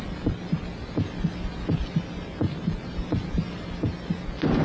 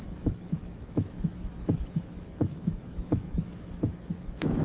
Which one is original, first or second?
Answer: first